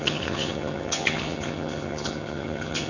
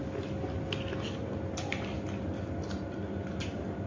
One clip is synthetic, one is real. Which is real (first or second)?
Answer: second